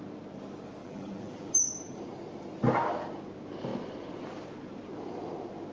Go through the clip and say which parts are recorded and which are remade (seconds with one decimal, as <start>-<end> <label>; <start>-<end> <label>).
0.0-0.8 recorded; 0.8-1.5 remade; 1.5-5.7 recorded